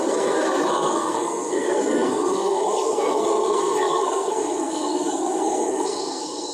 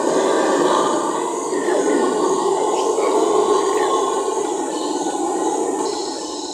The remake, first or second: first